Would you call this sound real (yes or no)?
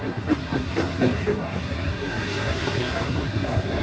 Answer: no